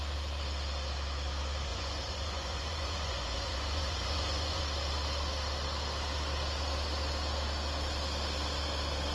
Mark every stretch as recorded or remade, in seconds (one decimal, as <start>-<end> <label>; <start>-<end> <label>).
0.0-1.7 recorded; 1.7-4.6 remade; 4.6-9.1 recorded